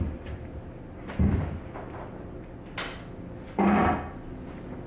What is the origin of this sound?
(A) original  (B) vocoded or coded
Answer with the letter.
A